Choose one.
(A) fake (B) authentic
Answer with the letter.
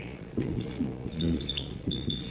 A